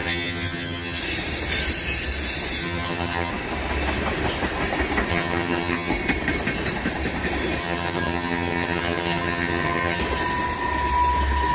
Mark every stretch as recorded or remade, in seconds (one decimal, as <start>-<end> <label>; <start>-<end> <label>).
0.0-1.0 remade; 1.0-2.6 recorded; 2.6-3.3 remade; 3.3-5.1 recorded; 5.1-5.9 remade; 5.9-7.6 recorded; 7.6-10.0 remade; 10.0-11.5 recorded